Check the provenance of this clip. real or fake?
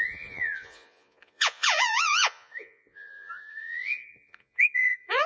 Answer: fake